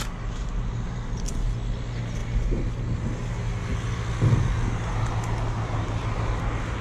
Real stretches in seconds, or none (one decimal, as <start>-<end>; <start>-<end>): 0.0-6.8

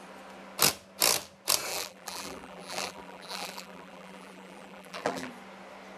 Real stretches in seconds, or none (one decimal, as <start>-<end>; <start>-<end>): 0.0-1.7; 5.3-6.0

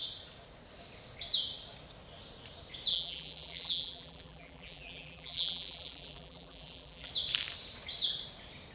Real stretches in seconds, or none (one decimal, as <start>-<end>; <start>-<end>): 0.0-2.9; 7.1-8.7

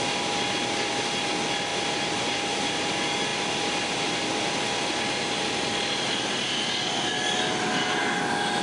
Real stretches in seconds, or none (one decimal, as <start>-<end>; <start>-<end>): 0.0-1.7; 2.9-3.3; 7.1-8.6

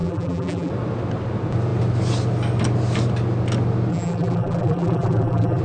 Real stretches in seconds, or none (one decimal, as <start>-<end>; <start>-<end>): 0.7-3.9

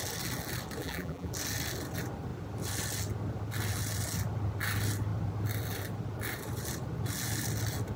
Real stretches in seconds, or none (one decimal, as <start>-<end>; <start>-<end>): 0.0-0.8; 1.3-8.0

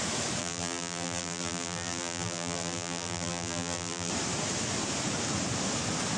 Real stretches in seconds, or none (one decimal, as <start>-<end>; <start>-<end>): 0.0-0.4; 4.1-6.2

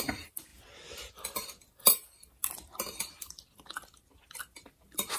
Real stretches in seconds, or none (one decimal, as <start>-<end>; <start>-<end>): 0.5-1.1; 2.4-2.9